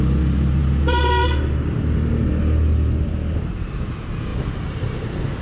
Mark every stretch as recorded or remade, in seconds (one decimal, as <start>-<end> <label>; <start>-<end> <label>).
0.0-5.4 recorded